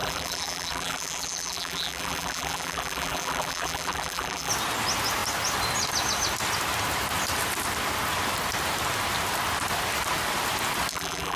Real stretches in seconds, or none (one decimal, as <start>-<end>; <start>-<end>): 4.5-10.9